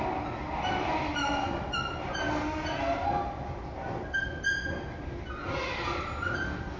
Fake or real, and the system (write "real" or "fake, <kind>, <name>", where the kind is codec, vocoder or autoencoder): real